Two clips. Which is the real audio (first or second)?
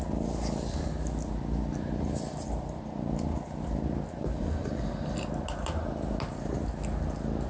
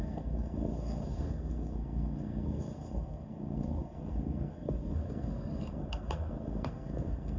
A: first